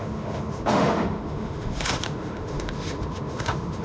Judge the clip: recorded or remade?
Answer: remade